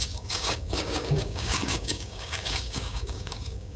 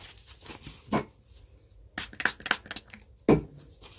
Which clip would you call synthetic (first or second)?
first